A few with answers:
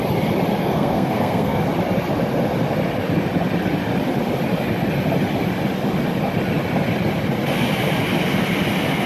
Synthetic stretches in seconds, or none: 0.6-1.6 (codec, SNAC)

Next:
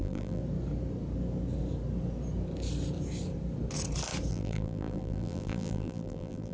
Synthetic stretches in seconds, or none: 0.0-0.4 (vocoder, BigVGAN v2); 4.3-6.5

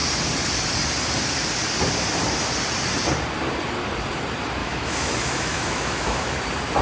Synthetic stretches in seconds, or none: 4.6-6.3 (autoencoder, DAC-VAE)